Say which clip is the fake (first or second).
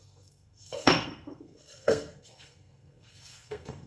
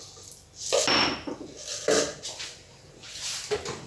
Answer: first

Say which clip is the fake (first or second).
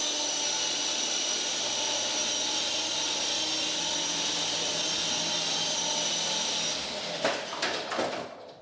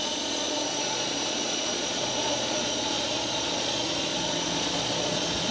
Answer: second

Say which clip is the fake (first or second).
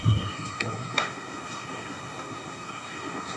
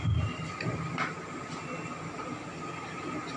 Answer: first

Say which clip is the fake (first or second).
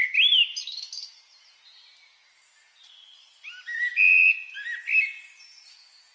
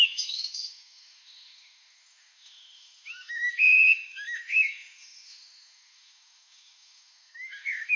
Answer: second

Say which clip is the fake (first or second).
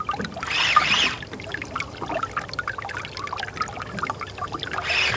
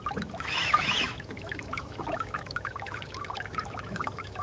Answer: second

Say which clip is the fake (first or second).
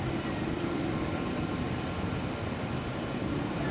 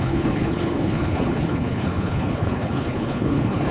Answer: second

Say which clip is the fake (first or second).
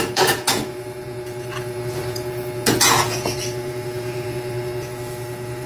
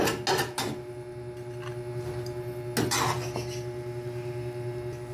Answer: first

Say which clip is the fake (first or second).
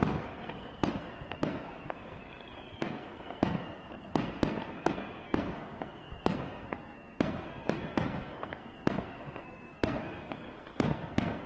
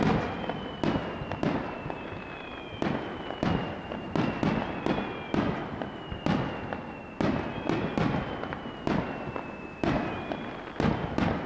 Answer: first